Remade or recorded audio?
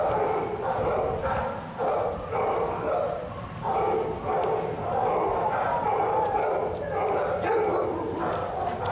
recorded